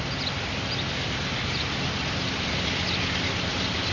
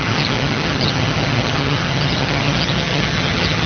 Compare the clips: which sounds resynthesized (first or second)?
second